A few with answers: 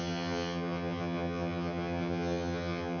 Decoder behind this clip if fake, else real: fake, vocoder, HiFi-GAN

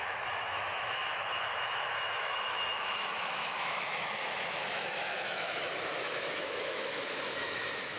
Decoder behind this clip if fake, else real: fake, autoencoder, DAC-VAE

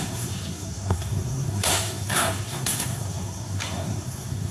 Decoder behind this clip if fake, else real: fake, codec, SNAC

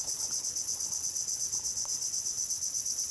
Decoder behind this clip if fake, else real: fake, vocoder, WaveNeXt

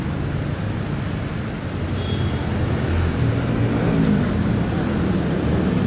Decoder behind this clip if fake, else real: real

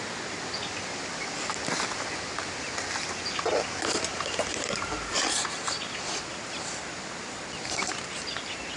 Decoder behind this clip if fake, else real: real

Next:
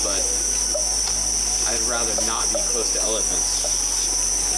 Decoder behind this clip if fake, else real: real